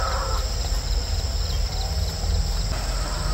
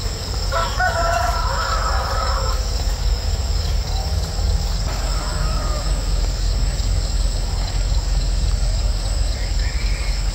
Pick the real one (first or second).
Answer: first